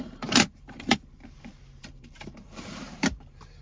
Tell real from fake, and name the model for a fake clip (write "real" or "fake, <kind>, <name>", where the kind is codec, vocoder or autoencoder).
fake, vocoder, BigVGAN v2